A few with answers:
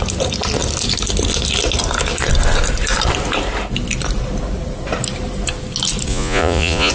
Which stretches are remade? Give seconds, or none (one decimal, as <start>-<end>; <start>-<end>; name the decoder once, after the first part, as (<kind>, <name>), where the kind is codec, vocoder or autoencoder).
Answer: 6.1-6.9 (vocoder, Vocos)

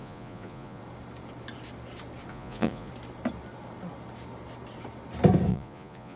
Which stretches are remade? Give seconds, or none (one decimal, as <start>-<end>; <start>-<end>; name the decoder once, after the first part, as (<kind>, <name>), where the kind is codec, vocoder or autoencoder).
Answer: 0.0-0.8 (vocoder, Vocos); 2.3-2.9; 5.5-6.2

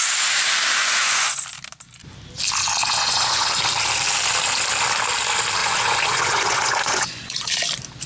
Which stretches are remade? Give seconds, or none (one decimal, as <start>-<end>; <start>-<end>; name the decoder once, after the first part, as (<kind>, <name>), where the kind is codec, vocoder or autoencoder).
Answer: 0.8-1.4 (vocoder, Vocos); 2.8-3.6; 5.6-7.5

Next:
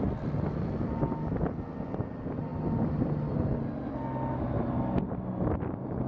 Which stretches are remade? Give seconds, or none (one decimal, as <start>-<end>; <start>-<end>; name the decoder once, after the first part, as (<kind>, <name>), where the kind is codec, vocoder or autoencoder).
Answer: none

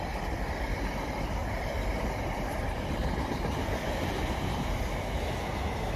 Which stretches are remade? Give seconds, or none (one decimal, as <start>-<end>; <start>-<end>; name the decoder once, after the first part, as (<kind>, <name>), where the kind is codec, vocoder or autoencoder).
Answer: none